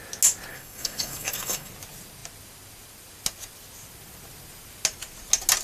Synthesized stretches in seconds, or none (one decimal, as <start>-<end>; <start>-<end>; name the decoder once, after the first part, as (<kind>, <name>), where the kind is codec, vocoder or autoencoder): 0.5-1.7 (codec, SNAC)